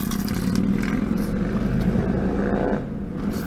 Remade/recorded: recorded